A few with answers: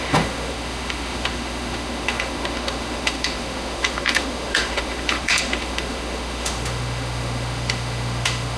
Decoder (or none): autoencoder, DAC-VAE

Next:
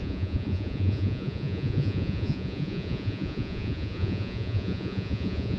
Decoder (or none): vocoder, Vocos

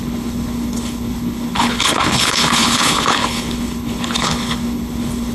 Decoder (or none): codec, HILCodec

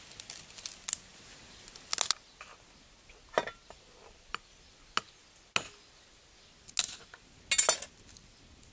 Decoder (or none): none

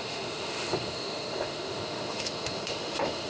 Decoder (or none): autoencoder, DAC-VAE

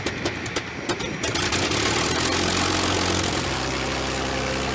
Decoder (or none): none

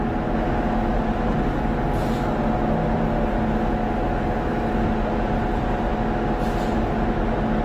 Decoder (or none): none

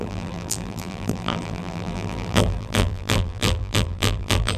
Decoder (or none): vocoder, BigVGAN v2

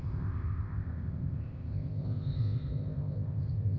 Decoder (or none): codec, ZipCodec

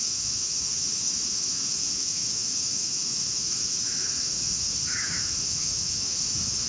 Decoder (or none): autoencoder, DAC-VAE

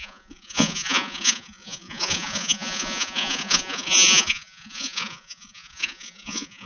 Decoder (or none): vocoder, Vocos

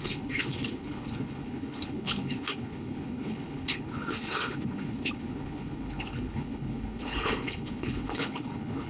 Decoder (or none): codec, HILCodec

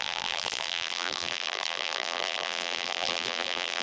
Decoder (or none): vocoder, BigVGAN v2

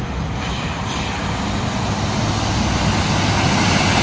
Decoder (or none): none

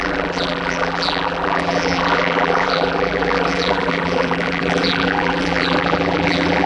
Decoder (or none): vocoder, BigVGAN v2